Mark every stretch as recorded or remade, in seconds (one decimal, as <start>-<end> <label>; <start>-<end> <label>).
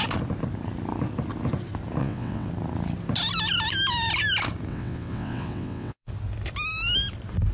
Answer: 0.0-2.0 recorded; 2.0-2.5 remade; 2.5-4.7 recorded; 4.7-6.1 remade; 6.1-7.5 recorded